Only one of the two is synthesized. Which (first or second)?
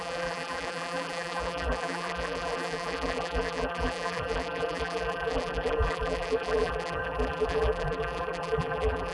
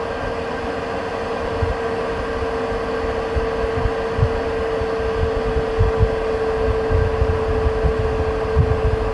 first